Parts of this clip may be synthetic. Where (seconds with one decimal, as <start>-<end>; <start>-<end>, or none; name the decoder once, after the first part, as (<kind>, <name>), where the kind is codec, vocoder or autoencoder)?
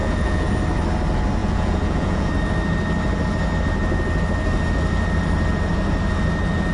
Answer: 0.0-0.5 (vocoder, Vocos); 1.4-2.3